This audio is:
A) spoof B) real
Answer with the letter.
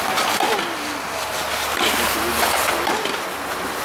A